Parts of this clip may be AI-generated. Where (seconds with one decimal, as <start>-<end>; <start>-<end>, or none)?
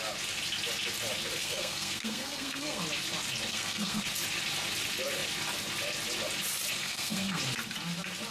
1.4-2.8; 3.5-4.0; 6.8-7.4